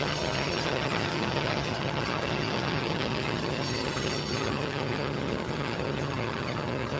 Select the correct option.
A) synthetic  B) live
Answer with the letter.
A